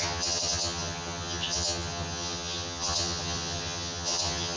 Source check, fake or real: fake